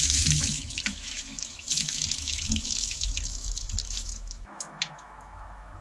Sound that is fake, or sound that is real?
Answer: fake